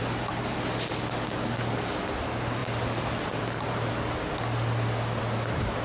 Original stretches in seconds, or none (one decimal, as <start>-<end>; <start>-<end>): 0.0-5.8